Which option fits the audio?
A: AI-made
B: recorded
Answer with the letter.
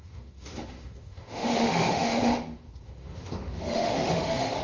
A